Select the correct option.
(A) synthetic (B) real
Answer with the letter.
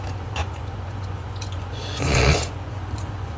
A